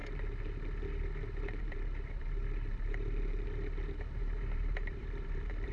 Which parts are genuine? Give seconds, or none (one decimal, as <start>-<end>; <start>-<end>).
0.0-1.6